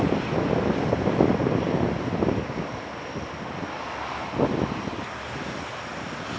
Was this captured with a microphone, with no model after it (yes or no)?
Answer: yes